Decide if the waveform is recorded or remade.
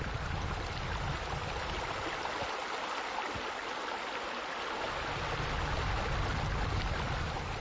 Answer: recorded